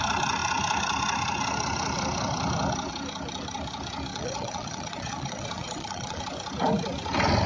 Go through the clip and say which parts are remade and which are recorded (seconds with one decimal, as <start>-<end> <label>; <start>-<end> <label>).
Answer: 0.0-4.1 recorded; 4.1-6.2 remade; 6.2-7.5 recorded

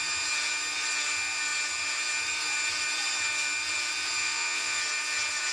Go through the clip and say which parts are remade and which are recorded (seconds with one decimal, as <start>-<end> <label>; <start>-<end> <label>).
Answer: 0.0-4.2 recorded; 4.2-4.8 remade; 4.8-5.5 recorded

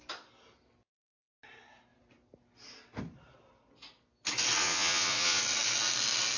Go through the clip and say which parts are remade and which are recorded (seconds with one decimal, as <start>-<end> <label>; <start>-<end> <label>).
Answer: 0.0-4.6 recorded; 4.6-5.4 remade; 5.4-6.4 recorded

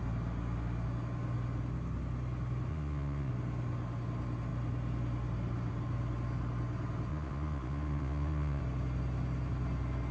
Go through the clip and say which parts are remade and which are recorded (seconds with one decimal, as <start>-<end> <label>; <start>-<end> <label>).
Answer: 0.0-2.7 recorded; 2.7-3.3 remade; 3.3-7.1 recorded; 7.1-8.6 remade; 8.6-10.1 recorded

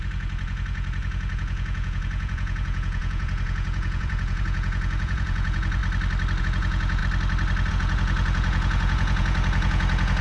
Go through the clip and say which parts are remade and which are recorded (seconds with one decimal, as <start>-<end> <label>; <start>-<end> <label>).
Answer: 0.0-5.8 remade; 5.8-6.4 recorded; 6.4-7.0 remade; 7.0-7.7 recorded; 7.7-10.2 remade

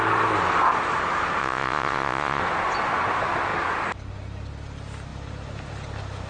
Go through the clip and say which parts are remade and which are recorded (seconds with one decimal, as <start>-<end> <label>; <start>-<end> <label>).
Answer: 0.0-1.4 recorded; 1.4-2.4 remade; 2.4-6.3 recorded

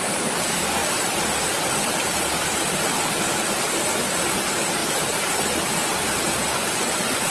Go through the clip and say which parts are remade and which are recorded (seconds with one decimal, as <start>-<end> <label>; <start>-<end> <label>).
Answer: 0.0-6.5 recorded; 6.5-7.3 remade